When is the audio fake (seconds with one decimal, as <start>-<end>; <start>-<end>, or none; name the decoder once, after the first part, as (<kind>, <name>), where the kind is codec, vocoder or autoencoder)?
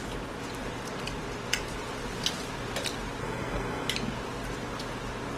3.2-3.9 (codec, SNAC)